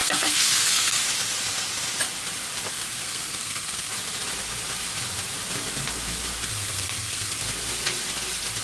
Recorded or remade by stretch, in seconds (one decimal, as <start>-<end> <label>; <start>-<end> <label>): 0.0-1.0 remade; 1.0-2.7 recorded; 2.7-3.9 remade; 3.9-6.4 recorded; 6.4-7.4 remade; 7.4-8.6 recorded